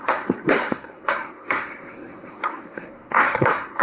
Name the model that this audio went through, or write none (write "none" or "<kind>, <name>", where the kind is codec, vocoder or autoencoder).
codec, SNAC